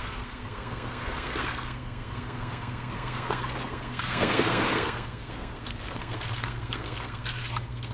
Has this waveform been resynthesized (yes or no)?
yes